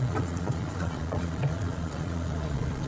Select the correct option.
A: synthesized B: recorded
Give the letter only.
A